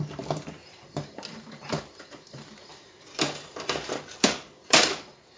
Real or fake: fake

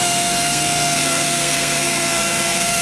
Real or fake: fake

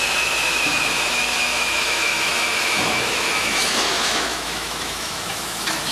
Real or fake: fake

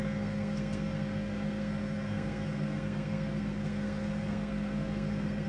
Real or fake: fake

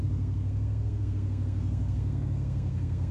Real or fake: fake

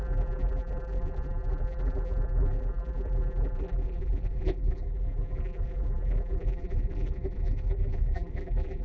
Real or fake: fake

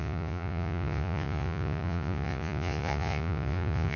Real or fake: fake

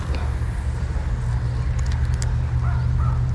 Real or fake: real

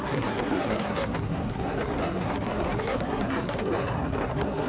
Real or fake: fake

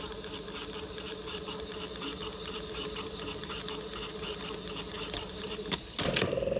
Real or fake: real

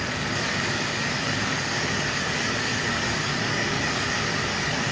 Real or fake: fake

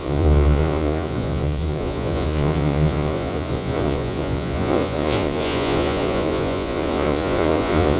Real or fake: fake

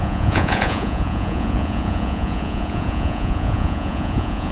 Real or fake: fake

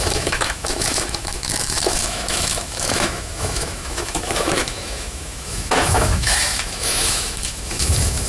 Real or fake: fake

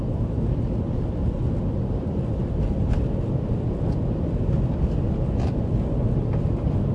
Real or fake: real